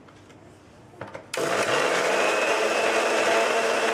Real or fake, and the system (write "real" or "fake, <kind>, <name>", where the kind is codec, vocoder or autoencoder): real